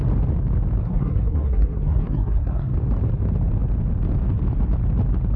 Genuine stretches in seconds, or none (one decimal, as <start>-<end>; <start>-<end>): 0.0-0.8; 2.7-5.4